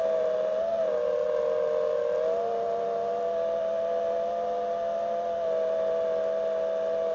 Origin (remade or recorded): recorded